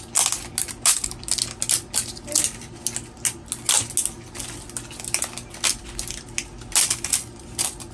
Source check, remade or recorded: recorded